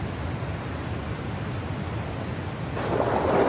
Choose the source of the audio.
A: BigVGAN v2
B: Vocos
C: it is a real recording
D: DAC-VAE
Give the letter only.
C